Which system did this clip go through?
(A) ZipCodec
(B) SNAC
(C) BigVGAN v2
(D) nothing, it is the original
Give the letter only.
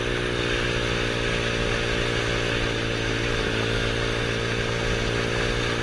D